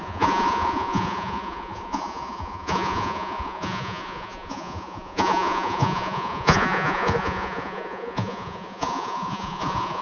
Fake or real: fake